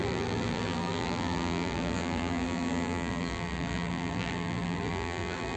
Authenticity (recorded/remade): remade